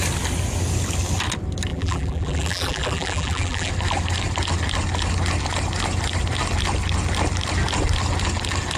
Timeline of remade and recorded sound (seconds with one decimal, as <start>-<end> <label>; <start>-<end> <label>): 0.0-1.7 recorded; 1.7-3.7 remade; 3.7-8.8 recorded